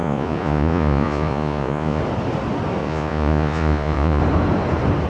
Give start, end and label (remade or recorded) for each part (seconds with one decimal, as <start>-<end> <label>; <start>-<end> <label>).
0.0-2.0 remade; 2.0-2.8 recorded; 2.8-4.2 remade; 4.2-5.1 recorded